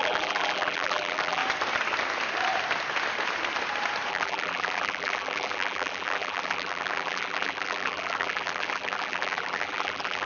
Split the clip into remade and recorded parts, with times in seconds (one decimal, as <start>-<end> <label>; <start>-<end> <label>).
0.0-1.4 remade; 1.4-4.1 recorded; 4.1-10.3 remade